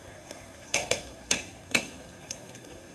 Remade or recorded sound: remade